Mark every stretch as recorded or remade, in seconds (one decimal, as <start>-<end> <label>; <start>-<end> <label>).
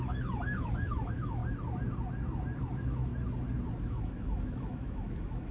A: 0.0-1.4 remade; 1.4-2.6 recorded; 2.6-3.1 remade; 3.1-3.8 recorded; 3.8-5.5 remade